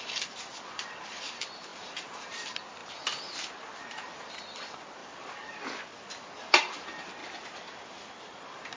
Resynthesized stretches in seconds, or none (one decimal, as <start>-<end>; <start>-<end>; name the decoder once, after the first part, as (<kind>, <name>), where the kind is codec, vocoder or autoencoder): 0.0-2.8 (vocoder, BigVGAN v2); 4.3-7.2; 8.2-8.8